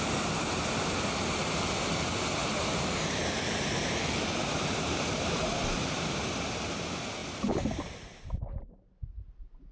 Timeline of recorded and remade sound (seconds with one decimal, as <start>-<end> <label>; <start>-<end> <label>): 0.0-2.4 recorded; 2.4-3.7 remade; 3.7-4.4 recorded; 4.4-6.2 remade; 6.2-9.7 recorded